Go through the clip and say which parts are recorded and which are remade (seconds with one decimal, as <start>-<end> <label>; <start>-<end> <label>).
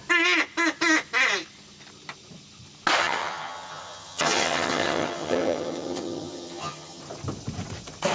0.0-3.0 recorded; 3.0-7.0 remade; 7.0-8.1 recorded